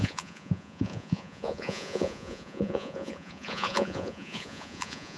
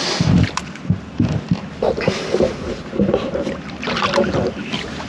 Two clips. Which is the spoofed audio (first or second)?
first